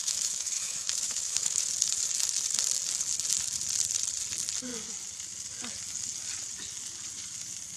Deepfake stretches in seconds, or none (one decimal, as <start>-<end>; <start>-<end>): 0.0-1.7